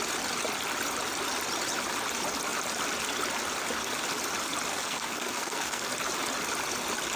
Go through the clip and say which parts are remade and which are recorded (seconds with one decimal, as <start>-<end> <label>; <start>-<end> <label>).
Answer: 0.0-4.7 recorded; 4.7-5.9 remade; 5.9-7.2 recorded